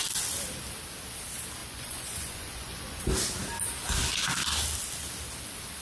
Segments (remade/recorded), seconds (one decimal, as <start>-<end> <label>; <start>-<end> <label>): 0.0-1.6 recorded; 1.6-3.1 remade; 3.1-5.8 recorded